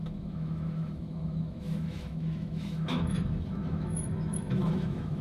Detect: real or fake fake